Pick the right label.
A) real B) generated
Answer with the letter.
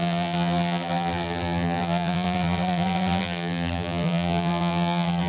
B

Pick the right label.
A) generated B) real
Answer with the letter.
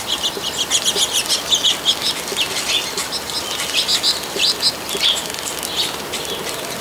B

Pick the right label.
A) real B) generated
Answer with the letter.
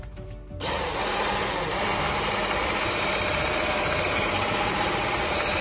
B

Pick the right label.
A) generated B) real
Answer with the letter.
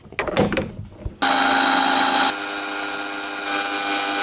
B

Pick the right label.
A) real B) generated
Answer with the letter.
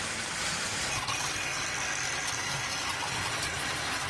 A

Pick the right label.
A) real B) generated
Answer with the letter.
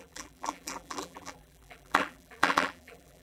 B